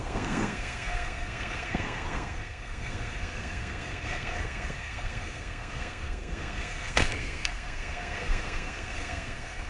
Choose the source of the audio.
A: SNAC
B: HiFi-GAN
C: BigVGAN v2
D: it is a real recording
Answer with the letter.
A